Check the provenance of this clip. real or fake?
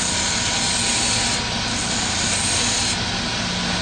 real